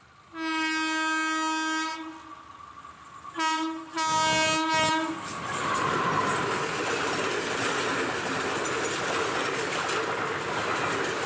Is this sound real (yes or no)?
yes